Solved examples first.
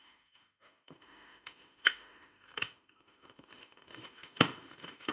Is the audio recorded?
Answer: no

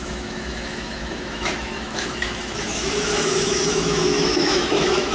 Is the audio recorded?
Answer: no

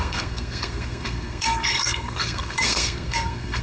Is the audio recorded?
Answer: no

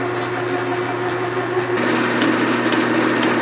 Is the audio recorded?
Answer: yes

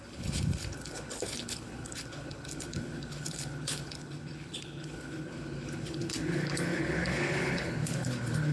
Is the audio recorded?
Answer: no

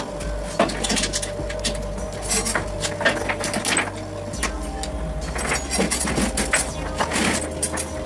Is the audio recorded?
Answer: yes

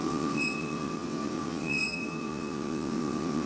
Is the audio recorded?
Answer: no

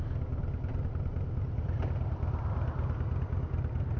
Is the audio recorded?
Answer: yes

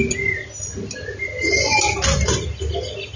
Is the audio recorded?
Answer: yes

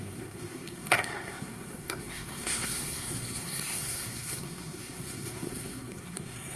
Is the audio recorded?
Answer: no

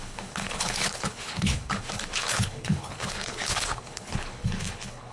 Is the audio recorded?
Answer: no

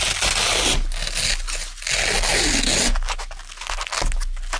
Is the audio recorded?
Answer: yes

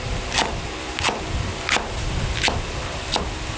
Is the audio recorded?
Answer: yes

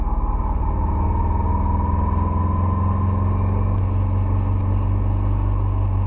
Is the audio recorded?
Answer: yes